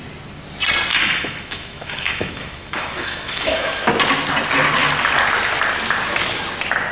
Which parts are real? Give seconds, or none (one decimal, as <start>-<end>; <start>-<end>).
0.0-0.9; 3.8-6.9